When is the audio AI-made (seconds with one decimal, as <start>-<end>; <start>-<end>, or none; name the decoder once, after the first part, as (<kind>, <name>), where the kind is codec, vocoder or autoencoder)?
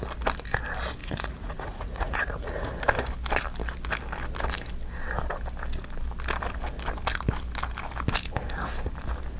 1.0-2.7 (vocoder, Vocos)